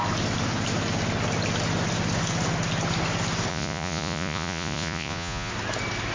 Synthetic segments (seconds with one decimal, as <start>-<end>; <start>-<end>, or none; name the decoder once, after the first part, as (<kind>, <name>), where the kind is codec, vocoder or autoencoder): 3.5-5.5 (vocoder, Vocos)